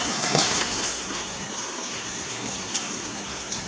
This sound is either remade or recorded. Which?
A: remade